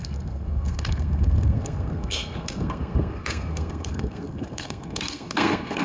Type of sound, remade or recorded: remade